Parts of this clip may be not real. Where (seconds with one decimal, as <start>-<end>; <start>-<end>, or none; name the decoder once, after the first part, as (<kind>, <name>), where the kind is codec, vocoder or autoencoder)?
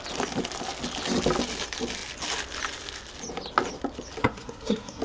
4.2-5.0 (codec, SNAC)